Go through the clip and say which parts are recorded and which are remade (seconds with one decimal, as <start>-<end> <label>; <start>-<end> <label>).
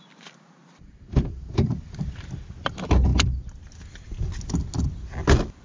0.0-0.6 recorded; 0.6-2.4 remade; 2.4-5.6 recorded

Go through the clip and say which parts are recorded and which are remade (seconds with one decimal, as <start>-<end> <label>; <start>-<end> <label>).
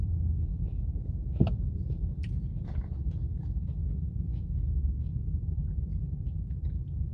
0.0-0.5 remade; 0.5-1.6 recorded; 1.6-3.8 remade; 3.8-5.4 recorded; 5.4-7.1 remade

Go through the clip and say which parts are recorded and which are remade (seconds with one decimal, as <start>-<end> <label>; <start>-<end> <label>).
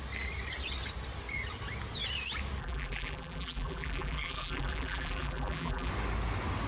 0.0-2.6 recorded; 2.6-5.9 remade; 5.9-6.7 recorded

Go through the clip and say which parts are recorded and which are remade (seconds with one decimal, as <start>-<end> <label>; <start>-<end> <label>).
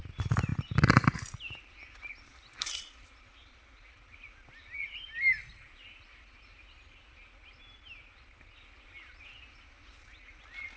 0.0-10.8 recorded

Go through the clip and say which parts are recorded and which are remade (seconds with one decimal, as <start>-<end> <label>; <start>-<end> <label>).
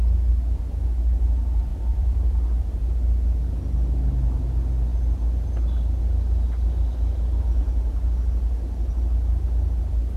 0.0-1.7 recorded; 1.7-2.6 remade; 2.6-10.2 recorded